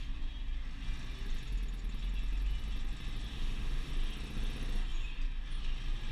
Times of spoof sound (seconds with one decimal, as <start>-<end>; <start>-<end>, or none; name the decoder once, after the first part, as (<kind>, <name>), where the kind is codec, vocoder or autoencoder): 3.3-3.9 (autoencoder, DAC-VAE)